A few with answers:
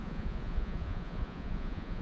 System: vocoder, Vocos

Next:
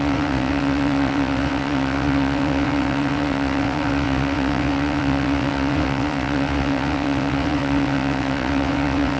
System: vocoder, WaveNeXt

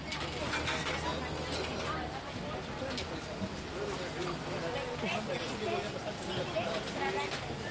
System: none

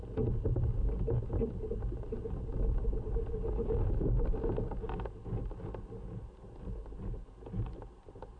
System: none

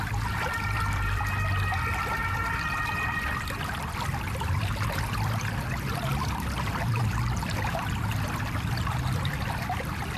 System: vocoder, BigVGAN v2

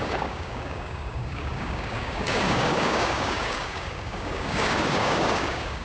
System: codec, DAC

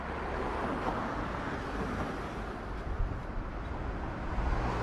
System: none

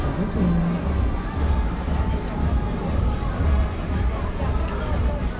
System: none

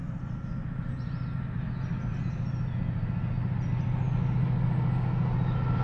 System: none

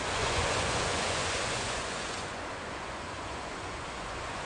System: vocoder, Vocos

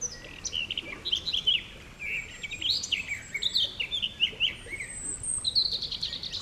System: none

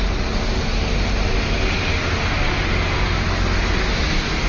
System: none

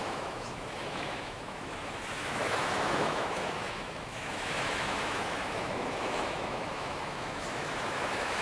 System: autoencoder, DAC-VAE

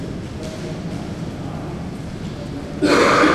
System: none